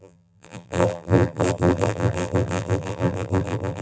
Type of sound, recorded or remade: remade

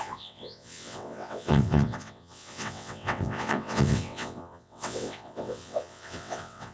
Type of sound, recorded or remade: remade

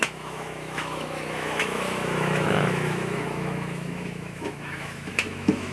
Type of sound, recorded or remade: remade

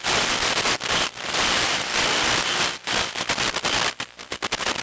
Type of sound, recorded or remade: recorded